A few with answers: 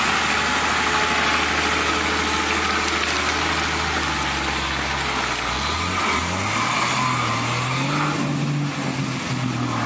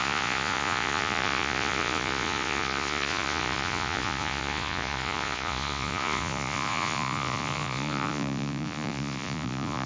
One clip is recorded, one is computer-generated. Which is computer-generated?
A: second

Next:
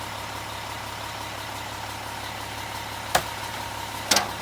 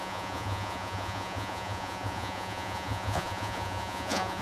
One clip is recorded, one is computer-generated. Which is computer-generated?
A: second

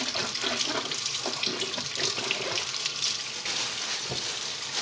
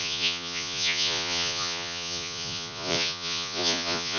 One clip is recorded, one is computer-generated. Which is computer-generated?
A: second